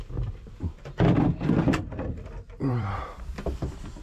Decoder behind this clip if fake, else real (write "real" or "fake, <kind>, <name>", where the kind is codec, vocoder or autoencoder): fake, vocoder, BigVGAN v2